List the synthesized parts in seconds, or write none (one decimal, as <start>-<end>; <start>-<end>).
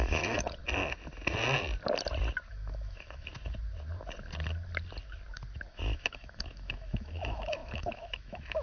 0.0-0.6; 2.5-3.3; 5.7-8.6